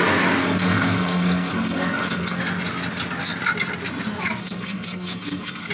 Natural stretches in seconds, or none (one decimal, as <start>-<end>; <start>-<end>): 0.0-0.4; 2.4-4.4

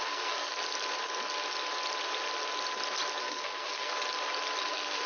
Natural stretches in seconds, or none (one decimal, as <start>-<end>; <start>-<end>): 0.5-3.2; 3.9-4.6

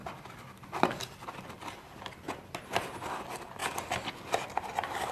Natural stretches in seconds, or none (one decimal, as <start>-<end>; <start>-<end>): 0.0-5.1

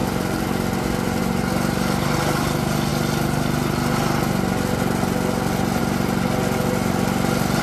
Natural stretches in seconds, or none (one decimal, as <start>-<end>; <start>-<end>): 0.0-7.6

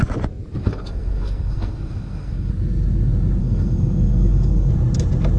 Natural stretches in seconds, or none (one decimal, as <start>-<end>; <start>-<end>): 0.0-0.6; 2.5-3.4; 4.7-5.4